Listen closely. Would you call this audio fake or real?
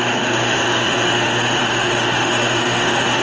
fake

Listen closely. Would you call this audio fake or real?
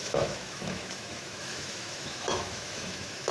fake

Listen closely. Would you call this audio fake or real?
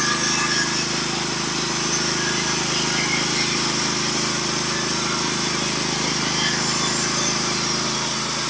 real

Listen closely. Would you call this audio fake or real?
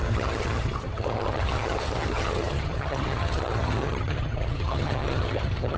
fake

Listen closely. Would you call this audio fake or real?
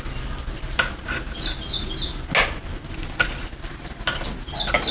real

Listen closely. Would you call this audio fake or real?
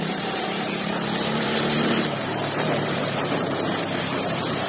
fake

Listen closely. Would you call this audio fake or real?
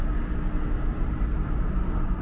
real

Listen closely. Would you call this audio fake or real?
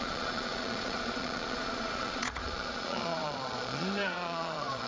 fake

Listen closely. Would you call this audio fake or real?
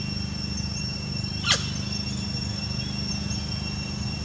real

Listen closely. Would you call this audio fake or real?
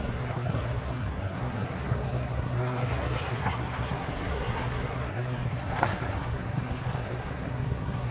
fake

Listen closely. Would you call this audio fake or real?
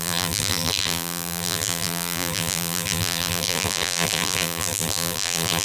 fake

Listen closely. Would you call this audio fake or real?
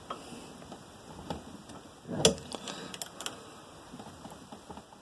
real